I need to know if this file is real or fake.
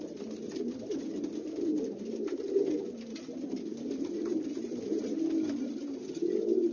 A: real